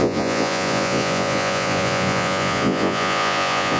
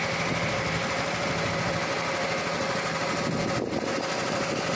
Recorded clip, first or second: second